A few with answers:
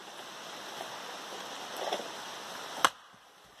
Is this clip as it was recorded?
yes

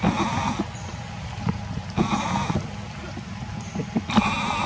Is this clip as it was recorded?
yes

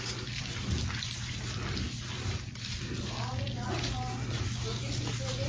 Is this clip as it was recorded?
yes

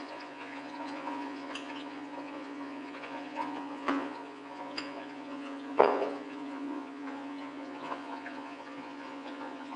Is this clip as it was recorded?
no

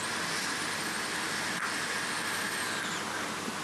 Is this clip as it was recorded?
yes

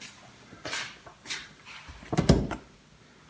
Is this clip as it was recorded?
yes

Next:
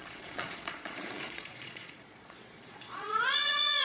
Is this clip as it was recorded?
no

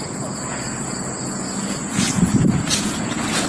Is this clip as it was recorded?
no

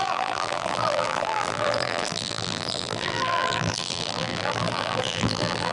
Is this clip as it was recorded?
no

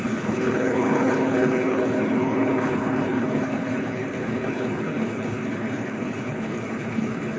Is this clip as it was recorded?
no